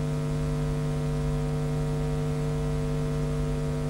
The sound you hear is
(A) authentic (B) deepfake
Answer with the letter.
A